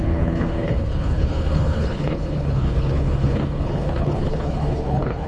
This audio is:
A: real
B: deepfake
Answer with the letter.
B